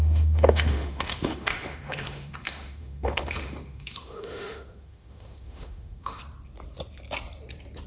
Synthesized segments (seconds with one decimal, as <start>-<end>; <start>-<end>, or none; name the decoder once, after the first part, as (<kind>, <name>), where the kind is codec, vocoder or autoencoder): 0.0-6.2 (autoencoder, DAC-VAE)